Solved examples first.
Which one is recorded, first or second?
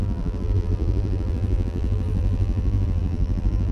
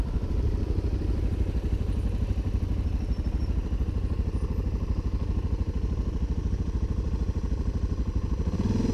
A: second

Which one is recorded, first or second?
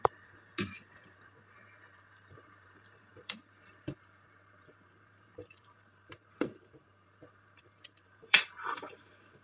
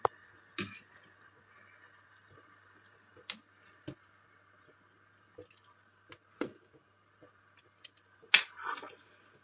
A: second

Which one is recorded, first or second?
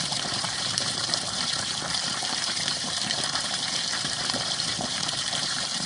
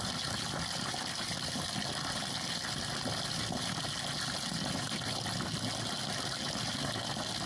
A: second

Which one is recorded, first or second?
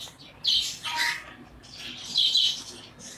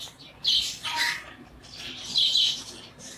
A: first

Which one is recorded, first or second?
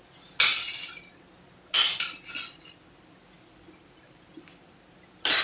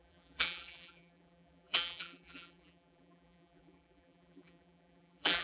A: first